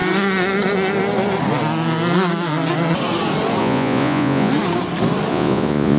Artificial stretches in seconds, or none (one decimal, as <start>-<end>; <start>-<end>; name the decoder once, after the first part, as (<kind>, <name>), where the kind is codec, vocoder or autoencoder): 3.6-4.5 (vocoder, Vocos); 5.3-6.0